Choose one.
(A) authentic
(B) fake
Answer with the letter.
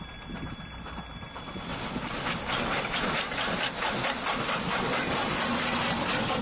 A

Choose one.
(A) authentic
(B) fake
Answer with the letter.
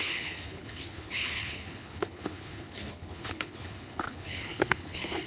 B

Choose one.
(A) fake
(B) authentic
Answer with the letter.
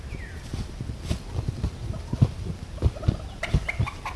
B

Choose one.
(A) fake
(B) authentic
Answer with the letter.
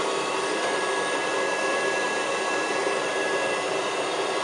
B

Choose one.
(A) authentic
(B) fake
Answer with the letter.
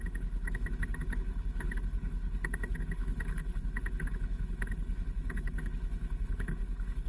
B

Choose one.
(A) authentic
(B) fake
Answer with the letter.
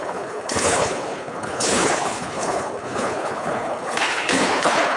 B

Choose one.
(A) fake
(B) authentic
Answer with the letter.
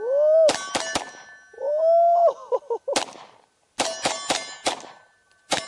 B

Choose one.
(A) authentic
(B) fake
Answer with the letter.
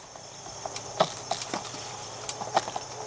A